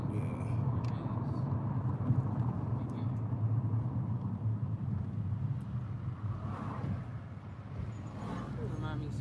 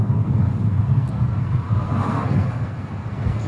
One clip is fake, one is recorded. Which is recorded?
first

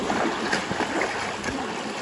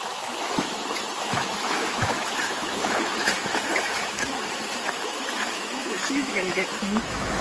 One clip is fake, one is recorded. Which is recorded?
first